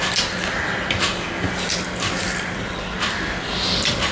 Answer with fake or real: real